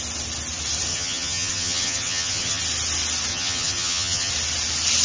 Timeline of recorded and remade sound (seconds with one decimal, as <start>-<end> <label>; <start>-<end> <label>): 0.0-0.9 recorded; 0.9-2.6 remade; 2.6-3.3 recorded; 3.3-4.3 remade; 4.3-5.0 recorded

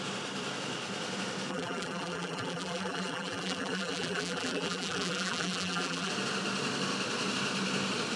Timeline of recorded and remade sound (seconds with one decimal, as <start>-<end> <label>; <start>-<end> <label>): 0.0-1.5 recorded; 1.5-6.1 remade; 6.1-8.2 recorded

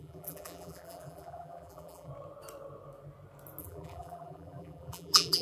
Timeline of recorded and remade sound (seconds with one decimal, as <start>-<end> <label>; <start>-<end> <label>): 0.0-2.1 remade; 2.1-3.6 recorded; 3.6-5.4 remade

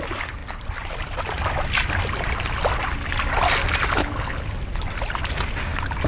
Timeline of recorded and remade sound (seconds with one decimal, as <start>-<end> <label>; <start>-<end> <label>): 0.0-4.0 recorded; 4.0-4.5 remade; 4.5-6.1 recorded

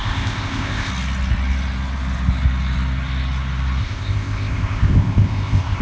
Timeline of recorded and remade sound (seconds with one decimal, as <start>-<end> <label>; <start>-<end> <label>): 0.0-0.9 remade; 0.9-3.8 recorded; 3.8-5.8 remade